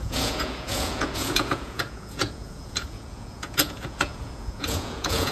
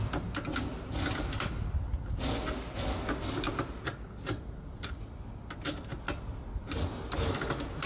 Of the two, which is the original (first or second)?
second